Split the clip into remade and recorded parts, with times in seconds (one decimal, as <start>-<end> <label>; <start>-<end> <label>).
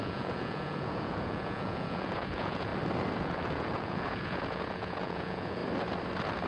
0.0-2.7 remade; 2.7-3.2 recorded; 3.2-5.6 remade; 5.6-6.5 recorded